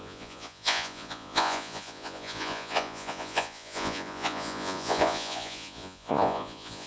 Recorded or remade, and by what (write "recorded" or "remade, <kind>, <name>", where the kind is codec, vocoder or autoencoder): remade, vocoder, Vocos